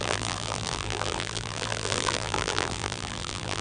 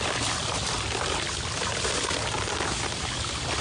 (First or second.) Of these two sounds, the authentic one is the second